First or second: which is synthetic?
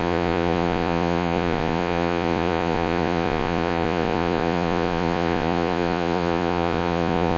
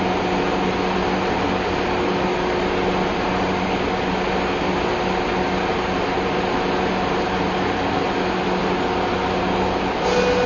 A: first